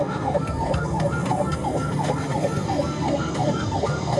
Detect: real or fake fake